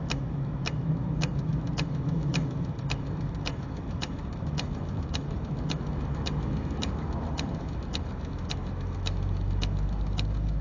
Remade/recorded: remade